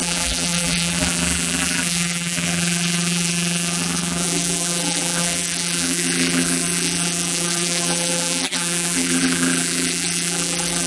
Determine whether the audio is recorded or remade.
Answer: remade